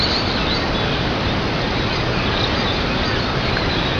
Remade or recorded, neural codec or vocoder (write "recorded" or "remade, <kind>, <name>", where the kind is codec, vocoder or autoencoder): recorded